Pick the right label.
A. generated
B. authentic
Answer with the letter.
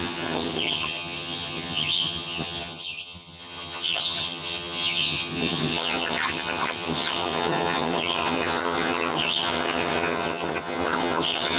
A